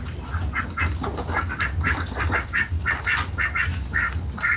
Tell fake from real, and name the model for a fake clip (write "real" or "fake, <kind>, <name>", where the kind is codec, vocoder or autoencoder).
real